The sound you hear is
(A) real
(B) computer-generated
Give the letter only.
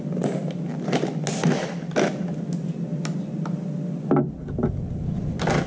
A